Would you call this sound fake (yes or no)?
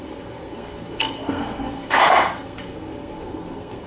yes